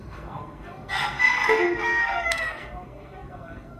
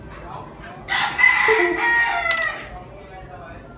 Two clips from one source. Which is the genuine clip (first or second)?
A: second